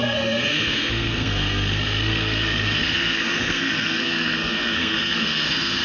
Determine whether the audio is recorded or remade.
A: remade